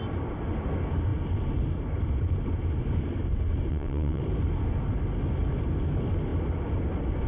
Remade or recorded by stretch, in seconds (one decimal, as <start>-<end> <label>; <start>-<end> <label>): 0.0-3.7 recorded; 3.7-4.2 remade; 4.2-7.3 recorded